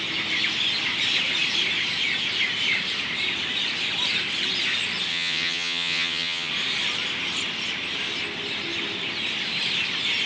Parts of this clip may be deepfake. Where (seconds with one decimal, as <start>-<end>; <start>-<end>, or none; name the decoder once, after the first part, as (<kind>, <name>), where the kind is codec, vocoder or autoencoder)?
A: 5.1-6.5 (vocoder, HiFi-GAN)

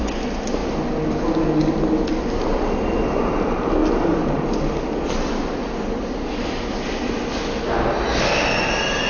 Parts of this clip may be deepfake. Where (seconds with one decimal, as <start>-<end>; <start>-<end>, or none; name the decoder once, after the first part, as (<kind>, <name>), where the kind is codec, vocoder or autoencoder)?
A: none